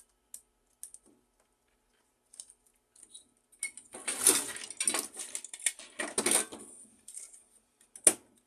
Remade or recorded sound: recorded